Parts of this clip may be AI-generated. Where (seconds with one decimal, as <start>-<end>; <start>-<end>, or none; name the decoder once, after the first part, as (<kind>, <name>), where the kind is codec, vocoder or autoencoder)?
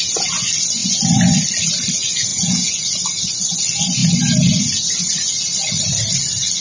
2.3-2.8 (vocoder, Vocos)